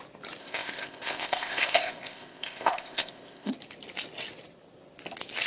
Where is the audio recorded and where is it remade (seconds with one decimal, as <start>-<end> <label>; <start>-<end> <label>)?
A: 0.0-0.4 recorded; 0.4-3.5 remade; 3.5-5.5 recorded